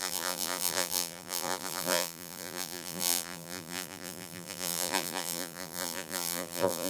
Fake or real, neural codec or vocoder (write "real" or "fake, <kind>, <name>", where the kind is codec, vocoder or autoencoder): fake, vocoder, BigVGAN v2